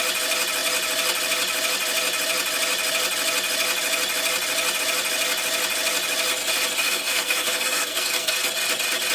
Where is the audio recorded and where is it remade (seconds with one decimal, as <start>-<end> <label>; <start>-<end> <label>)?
0.0-6.8 recorded; 6.8-8.5 remade; 8.5-9.1 recorded